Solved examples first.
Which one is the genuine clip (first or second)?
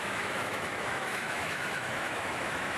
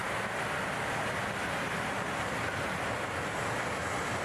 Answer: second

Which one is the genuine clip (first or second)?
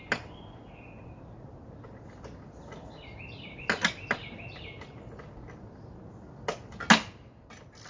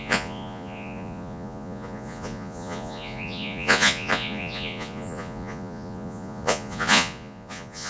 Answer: first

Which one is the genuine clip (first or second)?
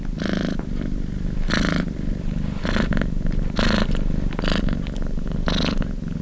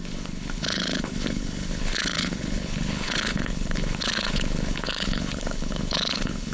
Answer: first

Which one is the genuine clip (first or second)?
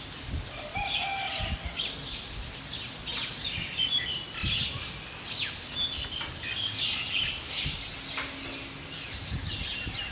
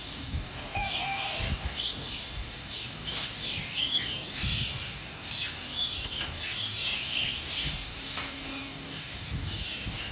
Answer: first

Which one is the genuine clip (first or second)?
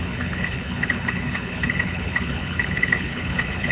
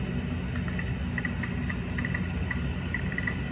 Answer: second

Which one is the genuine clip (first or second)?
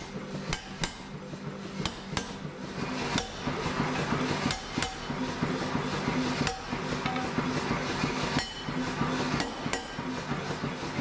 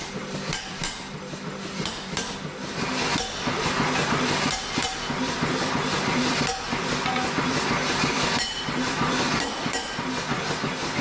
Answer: first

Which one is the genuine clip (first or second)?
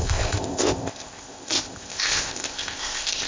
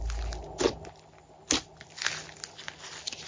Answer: second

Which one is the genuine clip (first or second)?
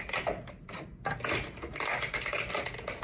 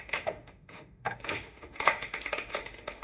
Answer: first